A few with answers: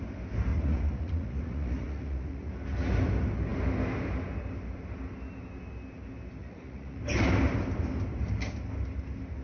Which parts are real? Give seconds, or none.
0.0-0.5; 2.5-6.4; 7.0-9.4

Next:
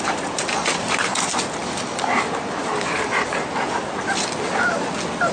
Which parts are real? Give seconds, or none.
0.0-5.3

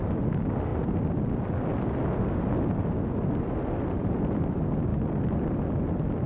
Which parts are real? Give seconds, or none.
0.0-6.3

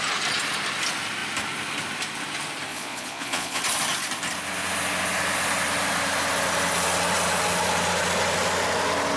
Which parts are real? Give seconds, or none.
0.0-2.7; 3.6-9.2

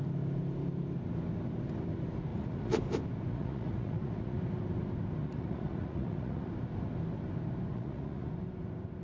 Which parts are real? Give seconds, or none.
0.0-2.3; 2.8-3.3; 4.4-5.2; 6.5-7.7; 8.3-9.0

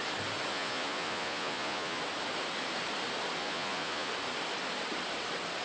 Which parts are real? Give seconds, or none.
0.0-0.5; 2.0-3.4; 4.1-5.6

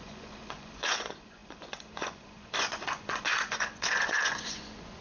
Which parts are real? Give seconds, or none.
none

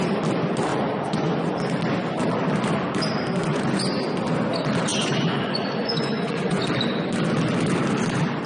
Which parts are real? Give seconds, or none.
0.0-0.7; 1.5-3.5; 4.0-4.9; 6.6-8.5